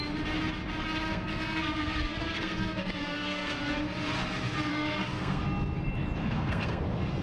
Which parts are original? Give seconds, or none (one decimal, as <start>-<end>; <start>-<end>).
0.0-1.1; 3.6-4.7; 5.4-6.2; 6.8-7.2